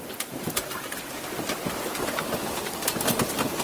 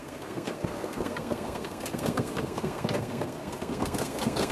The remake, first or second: second